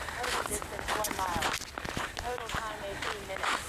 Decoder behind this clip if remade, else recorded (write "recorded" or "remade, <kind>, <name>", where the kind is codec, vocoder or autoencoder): recorded